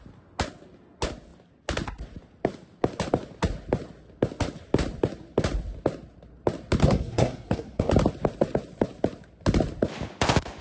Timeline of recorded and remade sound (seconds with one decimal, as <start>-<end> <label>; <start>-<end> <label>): 0.0-6.8 recorded; 6.8-7.9 remade; 7.9-10.6 recorded